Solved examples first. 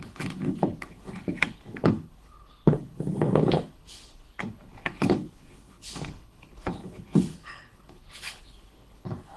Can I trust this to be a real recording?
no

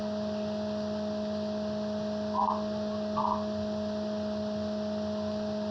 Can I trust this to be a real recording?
yes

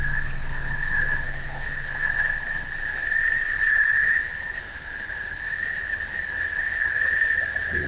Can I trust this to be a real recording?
no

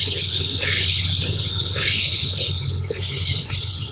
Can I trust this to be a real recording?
no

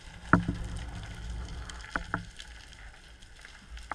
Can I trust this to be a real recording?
yes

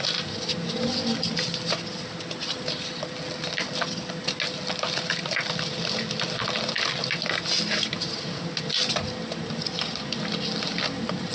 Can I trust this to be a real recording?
yes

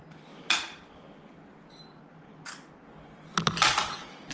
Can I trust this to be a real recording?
yes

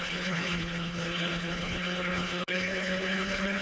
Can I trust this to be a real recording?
no